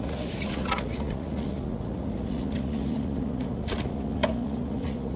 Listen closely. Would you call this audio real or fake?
fake